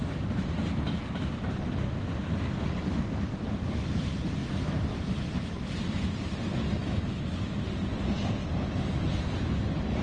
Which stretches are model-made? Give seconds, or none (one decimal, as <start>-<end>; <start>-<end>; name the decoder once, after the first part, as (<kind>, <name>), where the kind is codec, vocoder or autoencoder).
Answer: 6.8-7.3 (autoencoder, DAC-VAE)